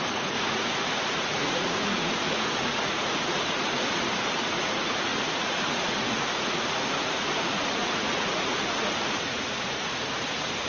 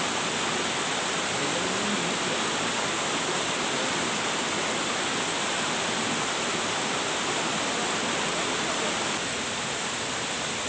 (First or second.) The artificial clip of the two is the first